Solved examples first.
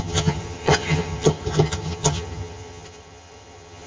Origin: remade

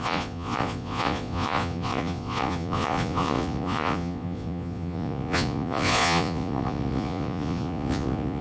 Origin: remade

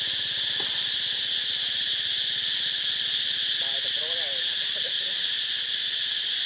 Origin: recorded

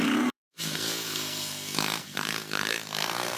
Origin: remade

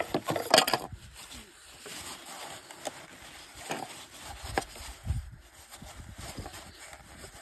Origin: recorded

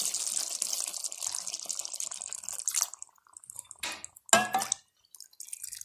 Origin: recorded